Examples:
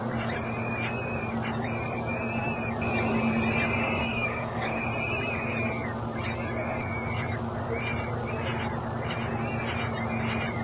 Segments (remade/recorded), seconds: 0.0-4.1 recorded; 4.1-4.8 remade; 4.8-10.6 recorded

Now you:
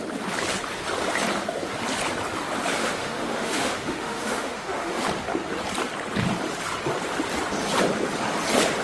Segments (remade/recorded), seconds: 0.0-2.8 recorded; 2.8-5.0 remade; 5.0-8.8 recorded

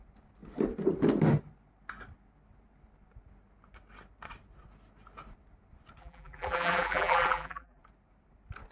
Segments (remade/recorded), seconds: 0.0-6.0 recorded; 6.0-7.8 remade; 7.8-8.7 recorded

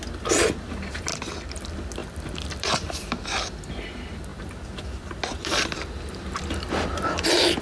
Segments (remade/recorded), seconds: 0.0-1.1 recorded; 1.1-1.6 remade; 1.6-2.0 recorded; 2.0-2.7 remade; 2.7-4.3 recorded; 4.3-7.6 remade